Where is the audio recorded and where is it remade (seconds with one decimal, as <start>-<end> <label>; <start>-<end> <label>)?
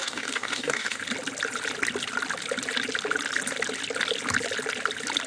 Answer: 0.0-1.0 remade; 1.0-5.3 recorded